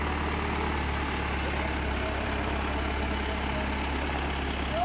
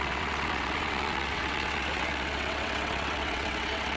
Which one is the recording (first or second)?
first